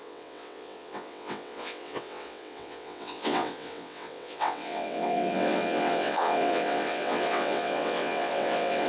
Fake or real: fake